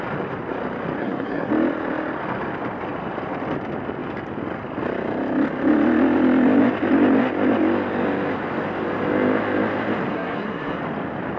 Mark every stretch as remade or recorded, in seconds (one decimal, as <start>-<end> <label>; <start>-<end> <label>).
0.0-1.0 recorded; 1.0-1.5 remade; 1.5-10.1 recorded; 10.1-10.8 remade; 10.8-11.4 recorded